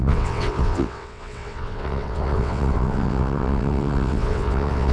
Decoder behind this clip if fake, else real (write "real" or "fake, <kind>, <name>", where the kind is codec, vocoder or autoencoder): fake, vocoder, WaveNeXt